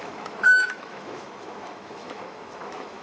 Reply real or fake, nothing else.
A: fake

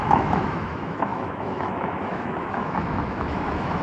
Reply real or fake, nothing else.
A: fake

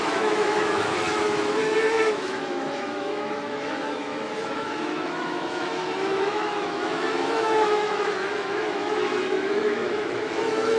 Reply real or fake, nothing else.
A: fake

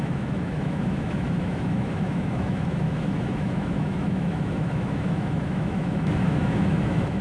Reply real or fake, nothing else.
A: fake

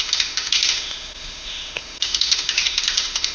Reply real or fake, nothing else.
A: fake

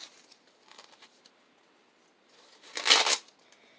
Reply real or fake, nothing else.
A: real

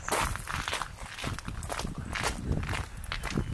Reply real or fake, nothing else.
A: real